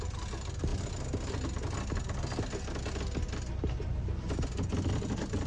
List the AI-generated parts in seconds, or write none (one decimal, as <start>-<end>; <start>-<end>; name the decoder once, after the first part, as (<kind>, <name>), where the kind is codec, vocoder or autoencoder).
none